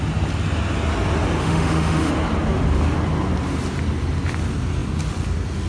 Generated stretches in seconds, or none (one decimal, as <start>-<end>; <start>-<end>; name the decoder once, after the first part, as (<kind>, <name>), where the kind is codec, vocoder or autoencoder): 1.4-2.1 (autoencoder, DAC-VAE)